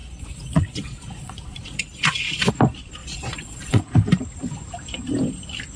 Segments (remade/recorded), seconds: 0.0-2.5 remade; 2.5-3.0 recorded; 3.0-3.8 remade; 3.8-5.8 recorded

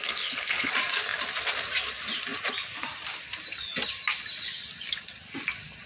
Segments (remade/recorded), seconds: 0.0-0.7 remade; 0.7-5.9 recorded

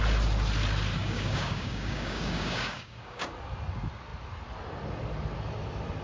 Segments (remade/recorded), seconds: 0.0-1.0 recorded; 1.0-3.3 remade; 3.3-6.0 recorded

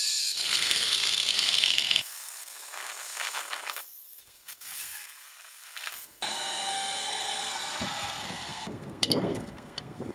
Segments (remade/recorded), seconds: 0.0-10.1 remade

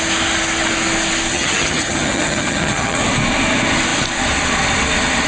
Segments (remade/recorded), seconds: 0.0-1.3 recorded; 1.3-3.0 remade; 3.0-5.3 recorded

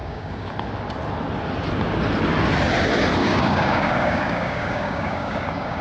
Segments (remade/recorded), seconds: 0.0-0.5 remade; 0.5-3.2 recorded; 3.2-5.8 remade

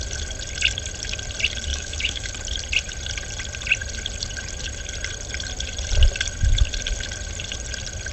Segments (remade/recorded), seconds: 0.0-1.7 recorded; 1.7-2.3 remade; 2.3-8.1 recorded